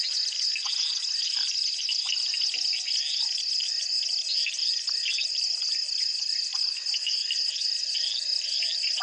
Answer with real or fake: real